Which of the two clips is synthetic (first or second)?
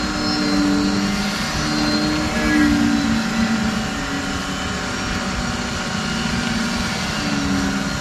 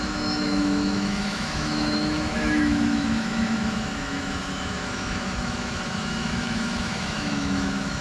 second